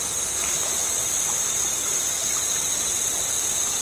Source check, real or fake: real